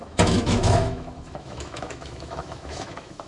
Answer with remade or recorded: remade